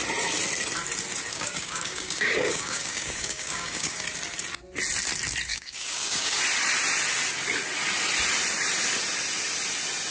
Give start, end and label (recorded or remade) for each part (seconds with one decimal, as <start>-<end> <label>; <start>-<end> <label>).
0.0-1.3 recorded; 1.3-4.0 remade; 4.0-5.5 recorded; 5.5-6.4 remade; 6.4-10.1 recorded